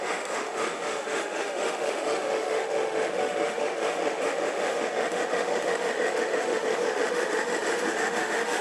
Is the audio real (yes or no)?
no